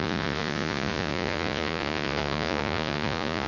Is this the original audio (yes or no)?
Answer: no